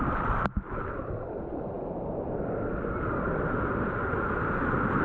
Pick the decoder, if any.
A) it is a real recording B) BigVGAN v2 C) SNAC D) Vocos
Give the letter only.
A